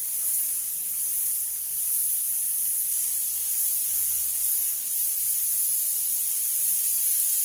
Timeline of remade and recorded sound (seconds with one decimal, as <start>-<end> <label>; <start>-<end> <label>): 0.0-2.0 remade; 2.0-3.0 recorded; 3.0-7.4 remade